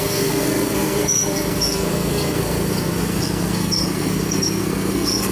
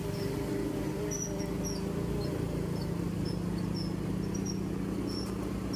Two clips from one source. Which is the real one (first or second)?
second